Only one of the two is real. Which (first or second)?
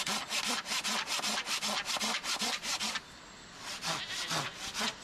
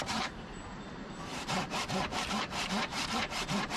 first